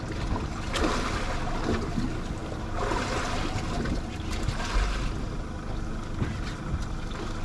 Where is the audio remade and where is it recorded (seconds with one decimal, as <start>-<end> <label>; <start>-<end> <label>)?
0.0-7.4 recorded